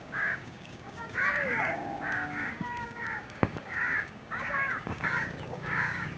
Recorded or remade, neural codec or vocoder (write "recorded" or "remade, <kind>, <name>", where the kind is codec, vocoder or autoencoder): remade, codec, DAC